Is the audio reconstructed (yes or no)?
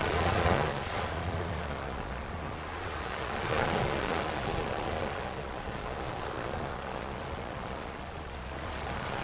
yes